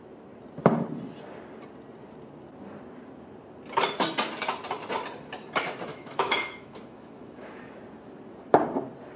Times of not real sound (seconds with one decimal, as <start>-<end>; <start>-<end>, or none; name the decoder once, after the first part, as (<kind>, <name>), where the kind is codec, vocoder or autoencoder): 5.9-7.6 (autoencoder, DAC-VAE)